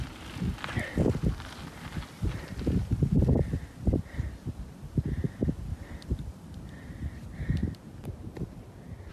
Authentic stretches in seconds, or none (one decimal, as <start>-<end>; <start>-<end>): 0.0-9.1